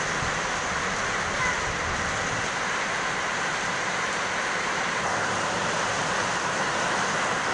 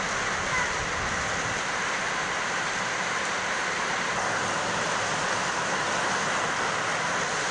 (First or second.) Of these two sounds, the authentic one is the first